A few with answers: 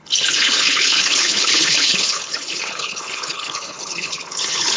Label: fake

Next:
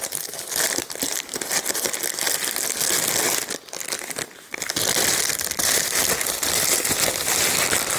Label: real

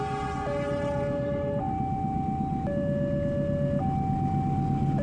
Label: real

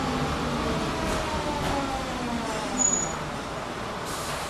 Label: real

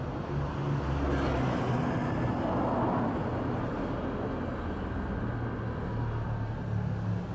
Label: real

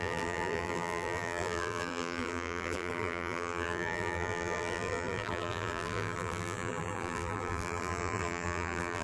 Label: fake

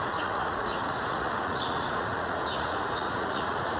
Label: fake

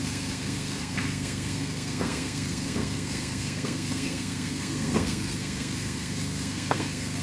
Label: fake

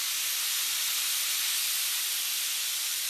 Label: real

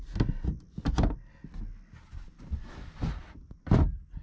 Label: real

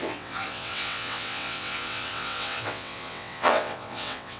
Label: fake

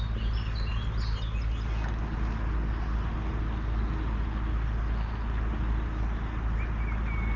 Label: real